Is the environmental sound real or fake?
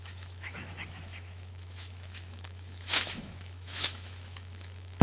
fake